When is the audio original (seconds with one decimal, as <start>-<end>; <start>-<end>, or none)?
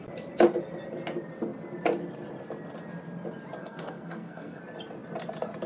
0.0-3.6; 4.6-5.7